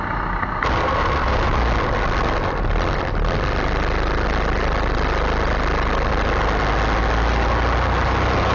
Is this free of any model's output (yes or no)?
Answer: yes